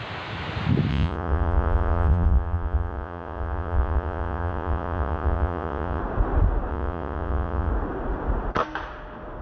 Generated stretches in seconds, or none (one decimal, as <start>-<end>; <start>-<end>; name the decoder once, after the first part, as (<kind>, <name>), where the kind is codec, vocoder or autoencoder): 0.9-6.0 (vocoder, Vocos); 6.7-7.7